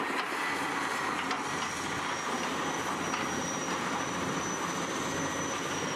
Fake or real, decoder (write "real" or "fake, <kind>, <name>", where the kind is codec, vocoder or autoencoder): real